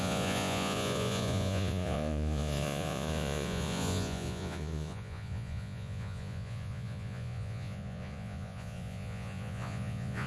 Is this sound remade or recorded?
remade